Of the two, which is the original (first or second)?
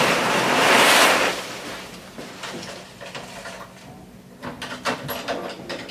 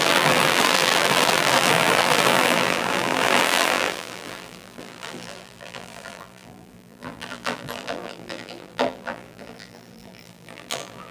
first